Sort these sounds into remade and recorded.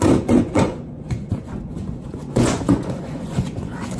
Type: remade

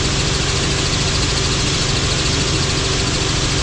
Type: recorded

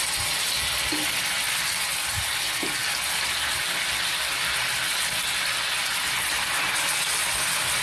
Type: recorded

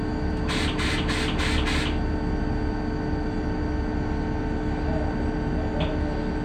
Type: recorded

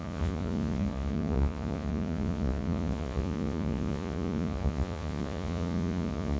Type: remade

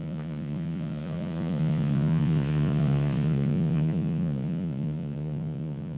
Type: remade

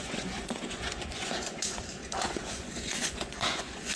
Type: remade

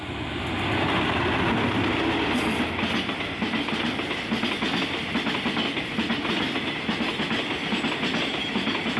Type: recorded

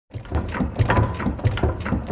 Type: recorded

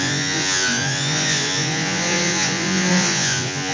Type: remade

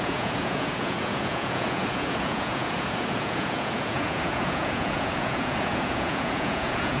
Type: remade